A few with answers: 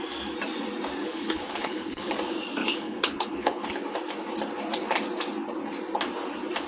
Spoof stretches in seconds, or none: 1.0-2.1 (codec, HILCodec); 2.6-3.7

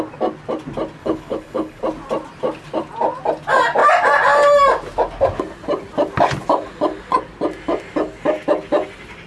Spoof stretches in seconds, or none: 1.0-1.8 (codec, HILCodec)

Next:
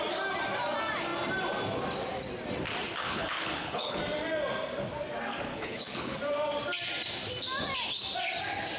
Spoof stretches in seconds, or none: 3.0-4.0 (codec, HILCodec); 5.5-6.2

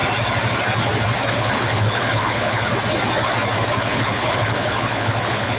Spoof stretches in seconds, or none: 1.3-2.7 (codec, HILCodec); 3.8-5.6

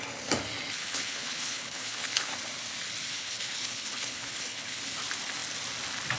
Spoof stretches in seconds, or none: 0.8-2.3 (codec, HILCodec); 3.1-4.8